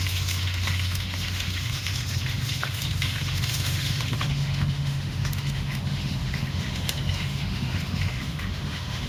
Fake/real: fake